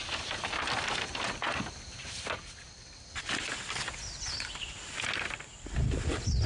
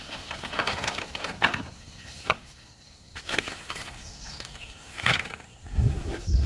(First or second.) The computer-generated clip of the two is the second